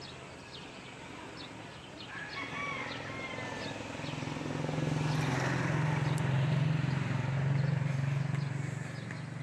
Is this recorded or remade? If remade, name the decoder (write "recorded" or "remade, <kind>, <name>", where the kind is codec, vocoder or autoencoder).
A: recorded